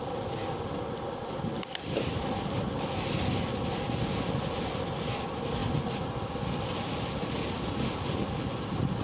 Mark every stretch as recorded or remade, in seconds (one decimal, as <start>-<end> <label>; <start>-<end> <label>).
0.0-9.0 recorded